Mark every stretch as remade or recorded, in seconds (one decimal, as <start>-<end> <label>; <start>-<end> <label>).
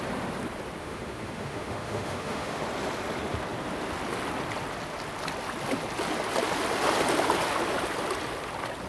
0.0-0.8 recorded; 0.8-2.6 remade; 2.6-8.9 recorded